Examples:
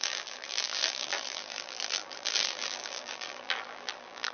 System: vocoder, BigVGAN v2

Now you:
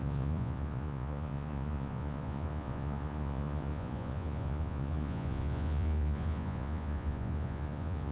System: vocoder, Vocos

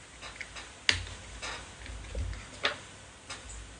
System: none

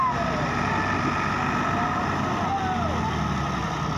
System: none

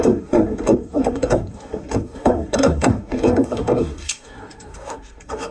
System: codec, SNAC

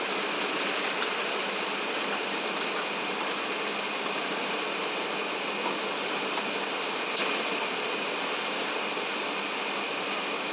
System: none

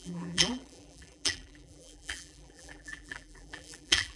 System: vocoder, BigVGAN v2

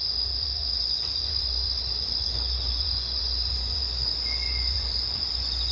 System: vocoder, Vocos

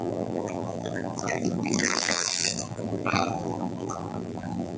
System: vocoder, BigVGAN v2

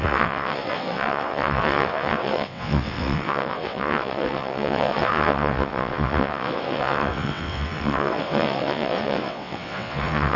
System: vocoder, WaveNeXt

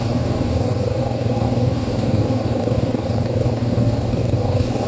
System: codec, DAC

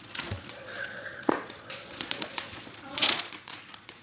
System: vocoder, Vocos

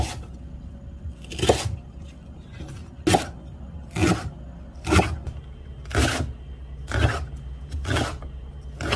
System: none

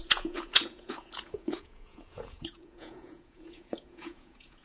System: vocoder, Vocos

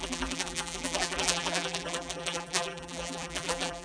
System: vocoder, BigVGAN v2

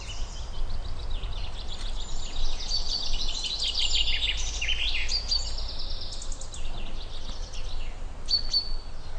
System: none